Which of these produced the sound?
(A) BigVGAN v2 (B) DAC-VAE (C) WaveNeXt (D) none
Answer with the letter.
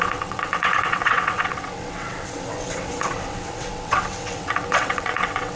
C